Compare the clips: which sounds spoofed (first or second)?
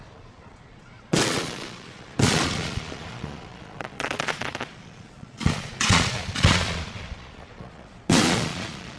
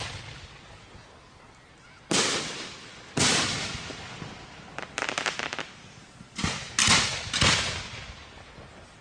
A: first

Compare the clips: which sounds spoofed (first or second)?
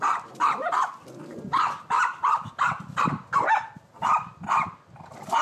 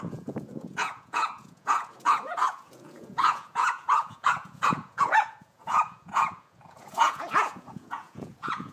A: second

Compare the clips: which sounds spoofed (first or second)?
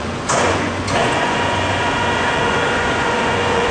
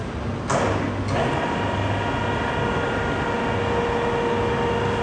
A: first